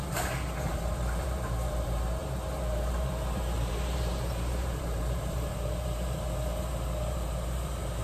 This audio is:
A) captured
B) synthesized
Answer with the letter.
B